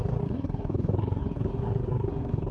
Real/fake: fake